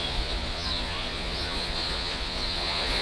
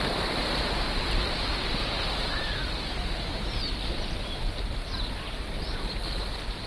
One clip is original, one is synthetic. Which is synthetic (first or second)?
first